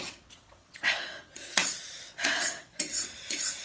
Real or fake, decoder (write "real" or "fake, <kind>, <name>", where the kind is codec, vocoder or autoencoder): fake, vocoder, WaveNeXt